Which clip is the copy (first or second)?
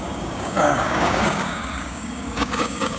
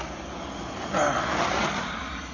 first